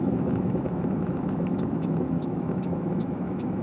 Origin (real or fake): fake